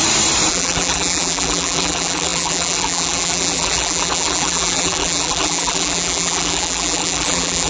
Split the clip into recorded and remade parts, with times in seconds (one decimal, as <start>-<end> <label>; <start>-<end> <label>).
0.0-0.5 recorded; 0.5-7.7 remade